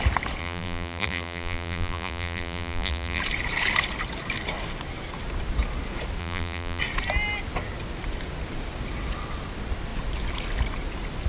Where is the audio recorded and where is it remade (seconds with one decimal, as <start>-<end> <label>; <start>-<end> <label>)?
0.0-0.4 recorded; 0.4-3.2 remade; 3.2-6.2 recorded; 6.2-6.8 remade; 6.8-11.3 recorded